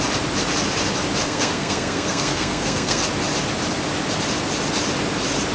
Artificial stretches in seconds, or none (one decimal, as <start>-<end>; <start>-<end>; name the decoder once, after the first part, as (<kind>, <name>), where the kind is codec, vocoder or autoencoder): 1.2-3.0 (codec, SNAC)